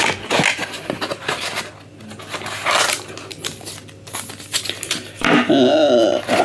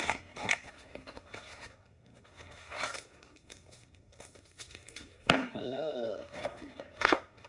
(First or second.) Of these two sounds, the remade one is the second